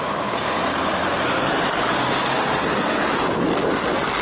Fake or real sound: real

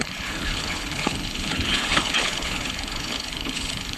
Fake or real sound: fake